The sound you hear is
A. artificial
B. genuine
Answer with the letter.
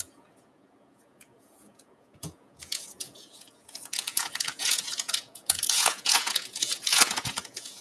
A